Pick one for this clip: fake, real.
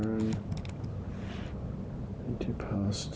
real